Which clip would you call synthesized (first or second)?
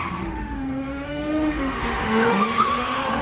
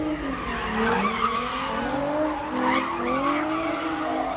first